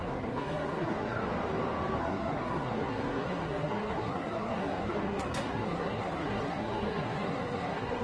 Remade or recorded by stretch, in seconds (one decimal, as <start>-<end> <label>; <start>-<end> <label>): 0.0-1.2 remade; 1.2-2.0 recorded; 2.0-8.0 remade